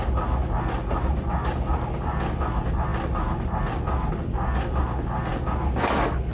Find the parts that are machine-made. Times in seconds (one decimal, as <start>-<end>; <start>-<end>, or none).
none